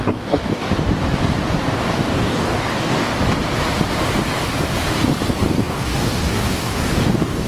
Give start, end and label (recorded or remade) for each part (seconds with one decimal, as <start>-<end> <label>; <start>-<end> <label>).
0.0-0.7 remade; 0.7-1.8 recorded; 1.8-3.1 remade; 3.1-5.5 recorded; 5.5-7.5 remade